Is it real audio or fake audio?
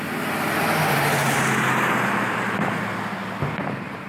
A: real